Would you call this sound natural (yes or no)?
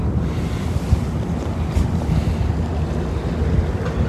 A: yes